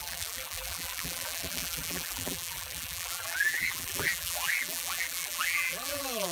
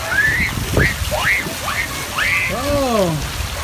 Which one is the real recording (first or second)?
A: second